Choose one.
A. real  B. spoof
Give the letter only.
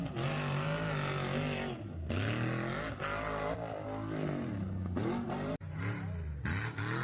A